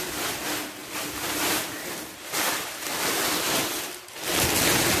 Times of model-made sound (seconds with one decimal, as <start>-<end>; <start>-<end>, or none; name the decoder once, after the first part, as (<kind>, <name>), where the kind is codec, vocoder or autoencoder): 0.8-3.8 (vocoder, BigVGAN v2)